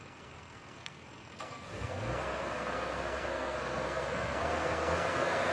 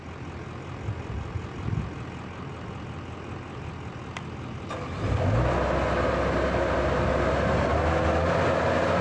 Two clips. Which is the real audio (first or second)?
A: second